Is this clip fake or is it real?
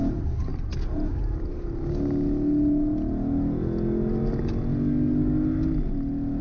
real